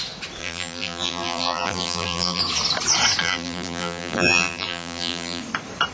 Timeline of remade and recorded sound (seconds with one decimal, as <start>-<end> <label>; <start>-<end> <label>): 0.0-0.4 recorded; 0.4-2.4 remade; 2.4-3.2 recorded; 3.2-5.4 remade; 5.4-5.9 recorded